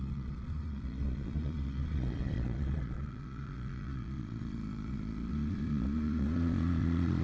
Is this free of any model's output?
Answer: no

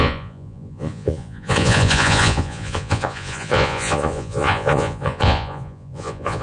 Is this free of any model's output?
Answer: no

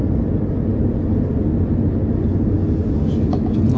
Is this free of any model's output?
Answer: yes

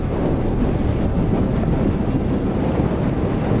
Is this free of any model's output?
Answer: yes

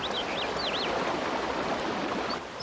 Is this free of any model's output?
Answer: yes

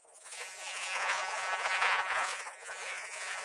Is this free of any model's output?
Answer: no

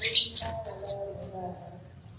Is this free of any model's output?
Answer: yes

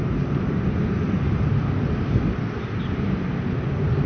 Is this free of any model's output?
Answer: yes